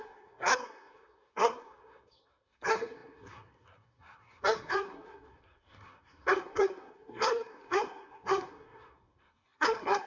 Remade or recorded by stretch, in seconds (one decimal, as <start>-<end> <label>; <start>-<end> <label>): 0.0-10.1 remade